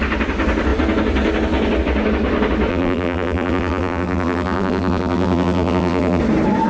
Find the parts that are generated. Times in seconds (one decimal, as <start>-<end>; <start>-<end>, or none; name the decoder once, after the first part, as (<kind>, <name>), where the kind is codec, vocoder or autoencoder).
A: 2.7-6.2 (vocoder, BigVGAN v2)